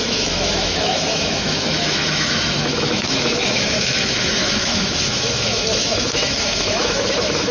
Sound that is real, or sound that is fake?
fake